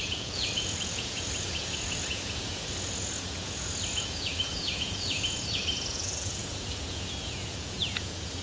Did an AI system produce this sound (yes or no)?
yes